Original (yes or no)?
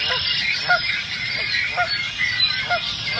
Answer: yes